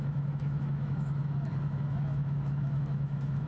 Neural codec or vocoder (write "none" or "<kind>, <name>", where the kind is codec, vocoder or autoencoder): autoencoder, DAC-VAE